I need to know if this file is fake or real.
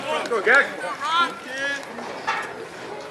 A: real